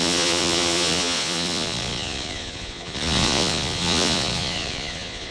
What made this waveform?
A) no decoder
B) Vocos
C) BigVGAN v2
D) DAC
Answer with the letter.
B